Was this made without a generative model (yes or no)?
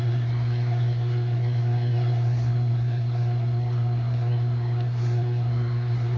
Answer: no